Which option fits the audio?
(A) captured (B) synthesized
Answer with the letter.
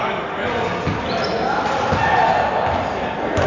A